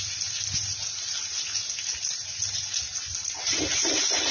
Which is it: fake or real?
real